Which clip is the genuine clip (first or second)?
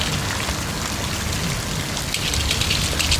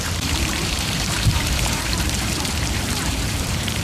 first